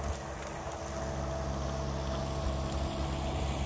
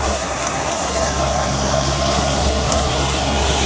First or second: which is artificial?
second